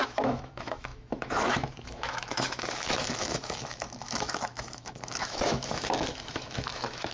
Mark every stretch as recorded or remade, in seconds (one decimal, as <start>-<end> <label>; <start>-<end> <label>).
0.0-7.1 remade